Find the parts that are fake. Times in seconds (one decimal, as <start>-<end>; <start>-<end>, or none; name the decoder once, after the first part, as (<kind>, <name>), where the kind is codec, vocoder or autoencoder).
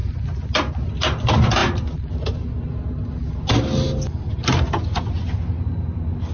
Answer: none